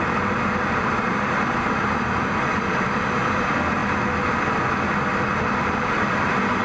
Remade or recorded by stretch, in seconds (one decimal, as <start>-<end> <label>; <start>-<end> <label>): 0.0-3.8 remade; 3.8-5.6 recorded; 5.6-6.6 remade